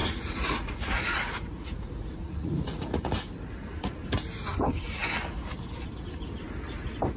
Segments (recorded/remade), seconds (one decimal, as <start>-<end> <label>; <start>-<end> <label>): 0.0-3.1 remade; 3.1-7.2 recorded